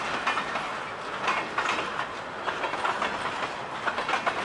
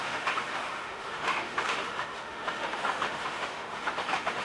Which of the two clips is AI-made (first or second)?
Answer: second